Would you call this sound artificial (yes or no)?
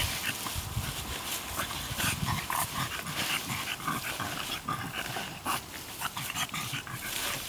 no